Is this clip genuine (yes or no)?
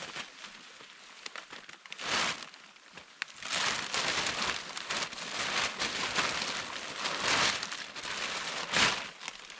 yes